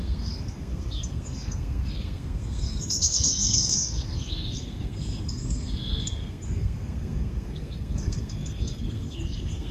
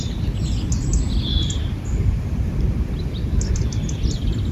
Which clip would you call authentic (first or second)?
second